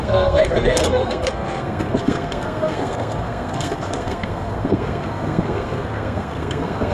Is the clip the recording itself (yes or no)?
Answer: no